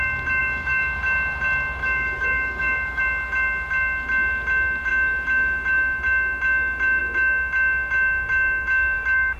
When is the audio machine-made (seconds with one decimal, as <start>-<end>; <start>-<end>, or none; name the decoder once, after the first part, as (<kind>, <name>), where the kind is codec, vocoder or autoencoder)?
0.4-1.0 (codec, DAC); 1.8-3.0